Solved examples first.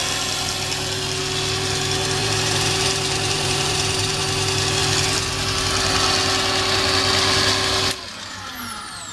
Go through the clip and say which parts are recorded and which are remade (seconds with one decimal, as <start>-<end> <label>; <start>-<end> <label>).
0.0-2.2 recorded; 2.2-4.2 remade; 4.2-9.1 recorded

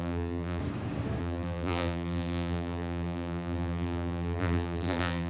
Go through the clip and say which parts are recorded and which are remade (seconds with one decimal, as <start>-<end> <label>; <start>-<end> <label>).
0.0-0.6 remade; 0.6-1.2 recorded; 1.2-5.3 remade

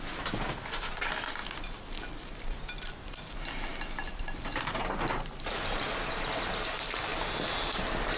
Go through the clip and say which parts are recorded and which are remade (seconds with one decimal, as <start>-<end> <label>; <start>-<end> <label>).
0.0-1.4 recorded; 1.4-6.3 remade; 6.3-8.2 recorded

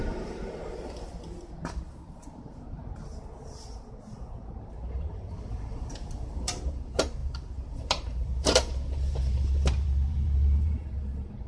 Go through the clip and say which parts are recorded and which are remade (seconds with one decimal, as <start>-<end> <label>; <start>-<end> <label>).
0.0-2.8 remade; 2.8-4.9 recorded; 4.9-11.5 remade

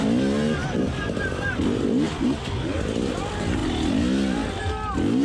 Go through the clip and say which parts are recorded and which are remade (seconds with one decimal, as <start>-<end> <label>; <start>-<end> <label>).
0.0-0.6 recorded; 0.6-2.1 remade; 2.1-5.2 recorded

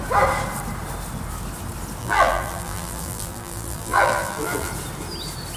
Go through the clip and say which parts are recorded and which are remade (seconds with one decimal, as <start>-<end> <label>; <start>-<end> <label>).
0.0-2.0 recorded; 2.0-4.7 remade; 4.7-5.6 recorded

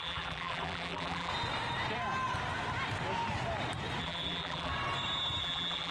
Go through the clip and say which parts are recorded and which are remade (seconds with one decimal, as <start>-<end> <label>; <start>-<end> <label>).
0.0-1.3 remade; 1.3-4.0 recorded; 4.0-4.7 remade; 4.7-5.4 recorded; 5.4-5.9 remade